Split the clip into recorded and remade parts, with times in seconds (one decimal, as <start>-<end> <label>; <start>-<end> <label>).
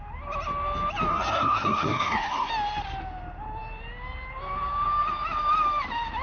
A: 0.0-1.1 recorded; 1.1-2.5 remade; 2.5-6.2 recorded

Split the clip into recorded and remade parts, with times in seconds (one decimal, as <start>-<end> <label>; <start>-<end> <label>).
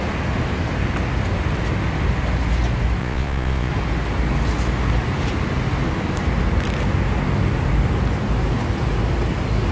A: 0.0-3.0 recorded; 3.0-3.7 remade; 3.7-9.7 recorded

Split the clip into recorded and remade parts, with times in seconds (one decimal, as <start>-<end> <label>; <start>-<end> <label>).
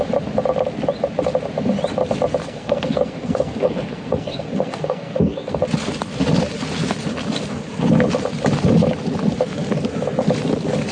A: 0.0-2.4 recorded; 2.4-5.6 remade; 5.6-10.9 recorded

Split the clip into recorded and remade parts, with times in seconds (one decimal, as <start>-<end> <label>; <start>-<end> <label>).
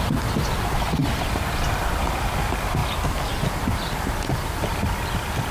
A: 0.0-1.0 recorded; 1.0-1.6 remade; 1.6-2.8 recorded; 2.8-4.0 remade; 4.0-5.5 recorded